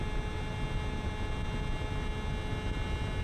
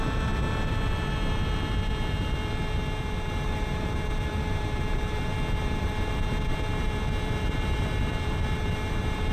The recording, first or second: first